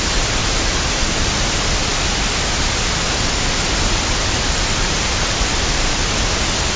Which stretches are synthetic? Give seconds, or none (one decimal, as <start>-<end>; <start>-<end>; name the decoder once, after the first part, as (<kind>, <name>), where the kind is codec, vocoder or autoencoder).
0.4-1.2 (vocoder, BigVGAN v2); 5.5-6.0